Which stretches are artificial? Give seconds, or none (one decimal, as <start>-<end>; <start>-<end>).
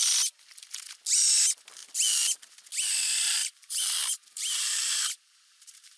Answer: 3.4-6.0